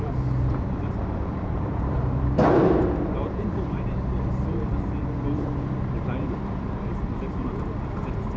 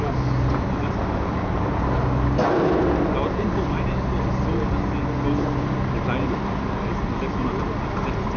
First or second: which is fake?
first